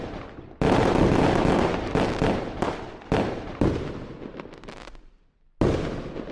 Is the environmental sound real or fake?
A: real